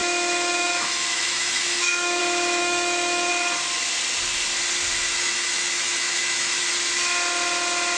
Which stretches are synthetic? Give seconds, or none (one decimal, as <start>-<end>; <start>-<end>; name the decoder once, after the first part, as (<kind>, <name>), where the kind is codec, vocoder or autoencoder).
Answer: 0.0-2.2 (autoencoder, DAC-VAE); 2.6-3.3; 5.1-6.6